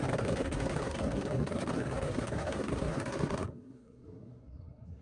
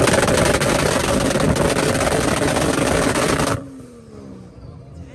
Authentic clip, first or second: second